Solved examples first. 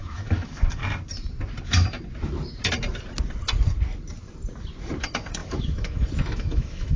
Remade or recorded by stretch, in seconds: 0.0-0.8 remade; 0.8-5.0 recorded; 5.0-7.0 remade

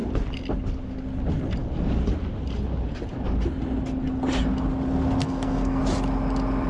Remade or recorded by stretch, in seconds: 0.0-5.2 recorded; 5.2-5.8 remade; 5.8-6.7 recorded

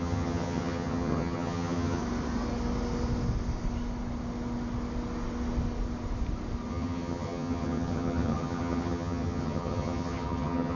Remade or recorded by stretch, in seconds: 0.0-2.0 remade; 2.0-6.7 recorded; 6.7-10.8 remade

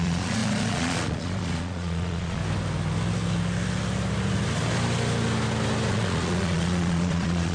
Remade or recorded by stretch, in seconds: 0.0-2.4 remade; 2.4-5.9 recorded; 5.9-7.5 remade

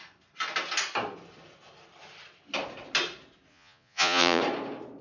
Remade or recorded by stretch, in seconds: 0.0-3.5 recorded; 3.5-4.4 remade; 4.4-5.0 recorded

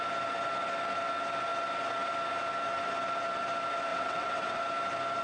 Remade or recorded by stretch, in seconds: 0.0-3.9 recorded; 3.9-4.6 remade; 4.6-5.2 recorded